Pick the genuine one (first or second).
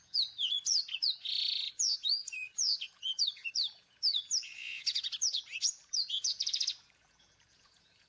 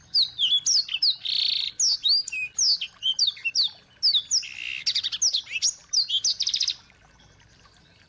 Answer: second